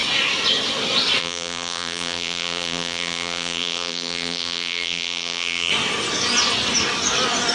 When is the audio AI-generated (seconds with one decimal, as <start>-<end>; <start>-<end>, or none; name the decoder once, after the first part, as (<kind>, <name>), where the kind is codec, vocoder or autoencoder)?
1.2-5.7 (vocoder, BigVGAN v2)